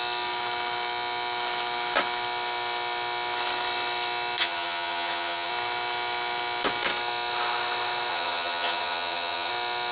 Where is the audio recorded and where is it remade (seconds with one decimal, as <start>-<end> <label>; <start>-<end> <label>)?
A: 0.0-4.4 recorded; 4.4-5.5 remade; 5.5-8.1 recorded; 8.1-9.5 remade; 9.5-9.9 recorded